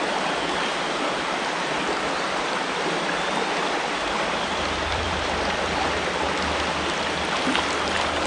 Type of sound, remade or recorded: remade